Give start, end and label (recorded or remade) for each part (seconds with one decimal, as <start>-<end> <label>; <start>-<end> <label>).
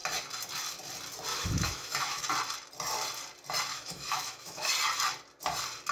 0.0-1.3 recorded; 1.3-2.2 remade; 2.2-3.7 recorded; 3.7-4.7 remade; 4.7-5.9 recorded